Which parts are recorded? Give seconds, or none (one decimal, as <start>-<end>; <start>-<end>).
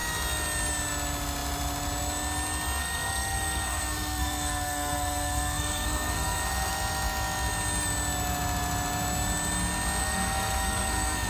0.0-2.8; 6.7-10.0